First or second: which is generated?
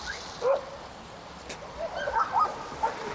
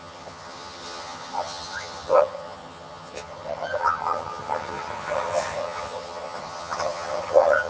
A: second